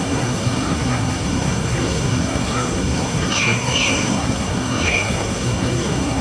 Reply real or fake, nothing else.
fake